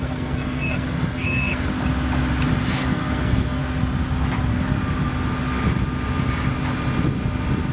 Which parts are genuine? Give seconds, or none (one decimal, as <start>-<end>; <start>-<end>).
1.7-2.7; 3.6-7.7